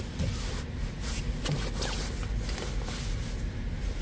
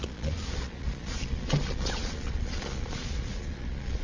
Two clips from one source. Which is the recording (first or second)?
first